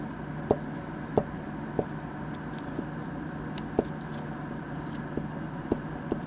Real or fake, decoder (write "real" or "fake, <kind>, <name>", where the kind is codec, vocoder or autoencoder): real